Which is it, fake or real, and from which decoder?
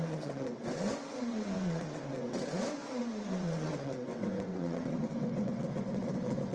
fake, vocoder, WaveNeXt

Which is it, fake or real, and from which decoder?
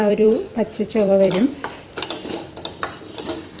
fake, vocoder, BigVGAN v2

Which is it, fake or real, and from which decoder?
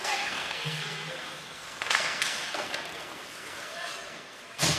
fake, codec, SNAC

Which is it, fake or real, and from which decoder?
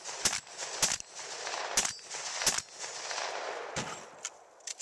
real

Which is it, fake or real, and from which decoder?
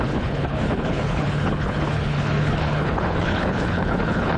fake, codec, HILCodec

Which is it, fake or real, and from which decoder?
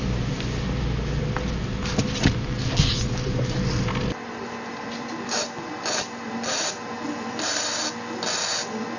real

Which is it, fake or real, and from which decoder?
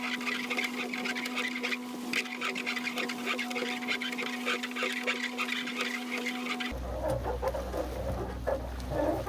real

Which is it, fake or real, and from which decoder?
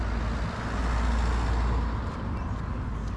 real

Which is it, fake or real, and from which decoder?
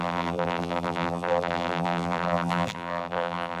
fake, vocoder, BigVGAN v2